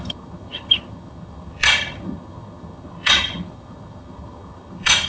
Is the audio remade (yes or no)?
yes